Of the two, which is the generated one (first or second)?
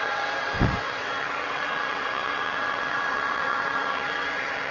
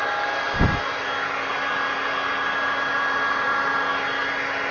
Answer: first